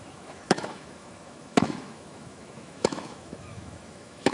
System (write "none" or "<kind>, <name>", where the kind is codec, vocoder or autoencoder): autoencoder, DAC-VAE